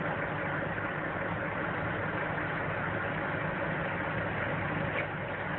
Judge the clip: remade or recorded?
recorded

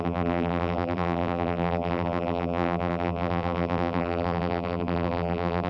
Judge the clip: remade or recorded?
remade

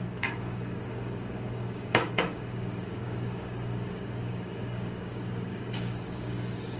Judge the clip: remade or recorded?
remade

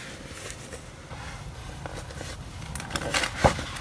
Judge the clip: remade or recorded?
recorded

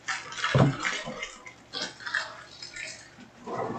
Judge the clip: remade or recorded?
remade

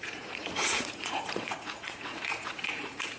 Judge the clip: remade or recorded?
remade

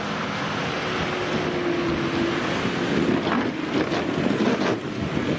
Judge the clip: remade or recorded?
recorded